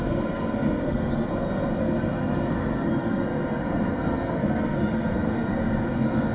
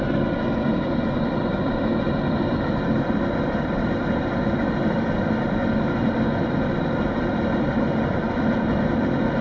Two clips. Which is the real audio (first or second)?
second